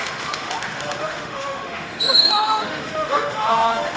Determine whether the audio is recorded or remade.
remade